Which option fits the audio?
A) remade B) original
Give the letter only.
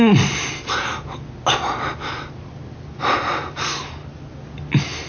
B